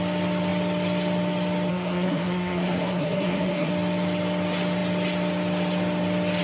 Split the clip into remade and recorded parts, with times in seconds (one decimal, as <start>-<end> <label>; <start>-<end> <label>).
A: 0.0-1.7 recorded; 1.7-3.7 remade; 3.7-6.4 recorded